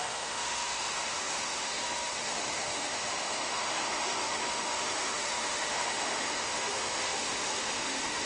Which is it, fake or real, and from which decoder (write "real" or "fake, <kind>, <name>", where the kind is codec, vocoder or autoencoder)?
fake, autoencoder, DAC-VAE